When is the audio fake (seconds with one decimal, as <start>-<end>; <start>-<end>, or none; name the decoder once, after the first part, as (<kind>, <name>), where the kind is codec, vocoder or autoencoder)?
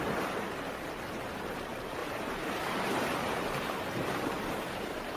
2.0-5.2 (vocoder, BigVGAN v2)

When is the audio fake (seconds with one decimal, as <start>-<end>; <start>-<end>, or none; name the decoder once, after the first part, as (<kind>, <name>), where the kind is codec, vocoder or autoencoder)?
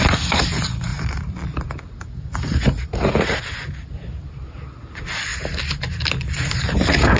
0.9-2.0 (vocoder, BigVGAN v2)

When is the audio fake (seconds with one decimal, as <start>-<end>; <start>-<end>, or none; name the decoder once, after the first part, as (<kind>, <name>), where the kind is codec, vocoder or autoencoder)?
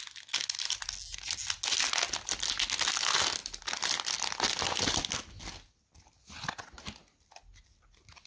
3.4-5.1 (vocoder, BigVGAN v2)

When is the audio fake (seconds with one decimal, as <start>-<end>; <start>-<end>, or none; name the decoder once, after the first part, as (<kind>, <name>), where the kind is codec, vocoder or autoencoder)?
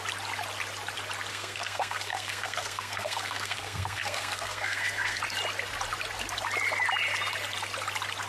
1.3-5.2 (codec, SNAC)